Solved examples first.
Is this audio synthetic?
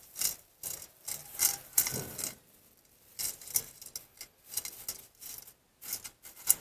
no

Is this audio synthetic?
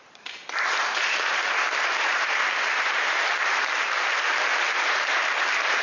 yes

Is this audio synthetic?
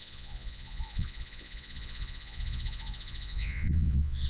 yes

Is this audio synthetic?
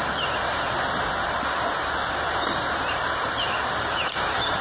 no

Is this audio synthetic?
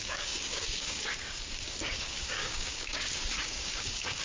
yes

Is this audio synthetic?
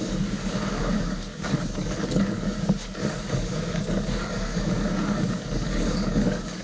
yes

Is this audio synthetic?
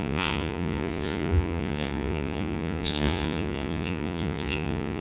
yes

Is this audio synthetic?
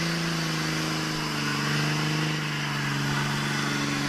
no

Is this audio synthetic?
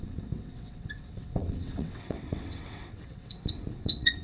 yes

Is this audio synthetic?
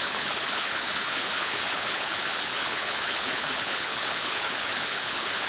yes